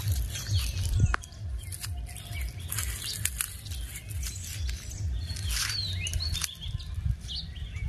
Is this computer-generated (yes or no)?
no